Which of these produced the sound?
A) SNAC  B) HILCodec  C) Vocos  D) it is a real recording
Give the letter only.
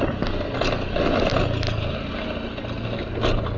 D